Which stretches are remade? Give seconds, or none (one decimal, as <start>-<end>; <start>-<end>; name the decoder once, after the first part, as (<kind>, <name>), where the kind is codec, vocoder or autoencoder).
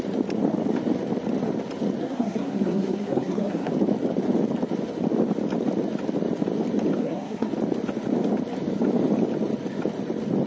2.0-3.7 (codec, SNAC); 7.0-7.5